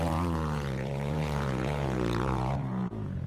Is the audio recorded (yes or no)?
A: no